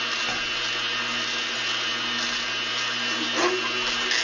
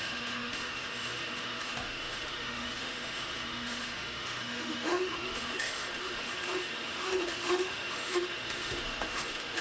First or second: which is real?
first